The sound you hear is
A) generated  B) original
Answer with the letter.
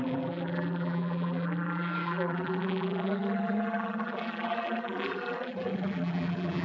A